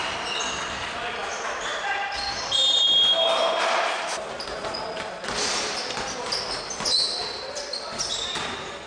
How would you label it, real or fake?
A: real